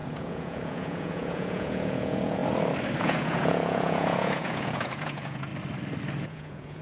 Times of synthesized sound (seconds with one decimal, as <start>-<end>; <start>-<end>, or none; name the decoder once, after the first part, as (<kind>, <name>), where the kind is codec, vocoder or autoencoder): 0.0-2.4 (vocoder, Vocos); 3.0-5.5; 6.2-6.8